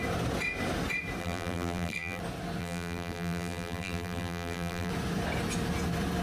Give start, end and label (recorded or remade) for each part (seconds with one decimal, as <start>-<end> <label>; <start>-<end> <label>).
0.0-1.2 recorded; 1.2-2.2 remade; 2.2-2.6 recorded; 2.6-4.9 remade; 4.9-6.2 recorded